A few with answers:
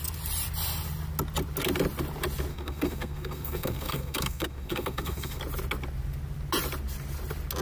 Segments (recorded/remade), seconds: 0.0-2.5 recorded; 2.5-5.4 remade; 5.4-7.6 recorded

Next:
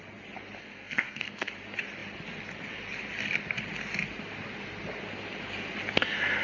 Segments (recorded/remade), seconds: 0.0-0.6 recorded; 0.6-1.5 remade; 1.5-6.4 recorded